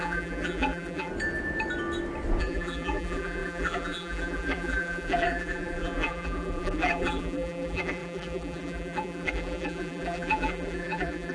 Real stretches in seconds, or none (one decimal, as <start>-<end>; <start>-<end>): 1.1-2.4